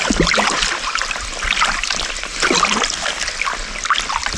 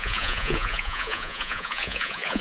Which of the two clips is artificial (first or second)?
second